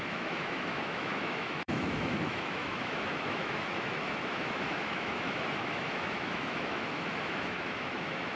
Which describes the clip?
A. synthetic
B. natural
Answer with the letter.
A